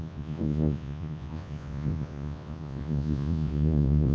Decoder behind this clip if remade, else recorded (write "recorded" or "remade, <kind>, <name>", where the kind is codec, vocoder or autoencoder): remade, vocoder, Vocos